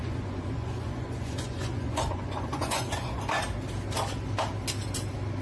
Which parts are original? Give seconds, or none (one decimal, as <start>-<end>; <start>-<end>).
3.2-5.4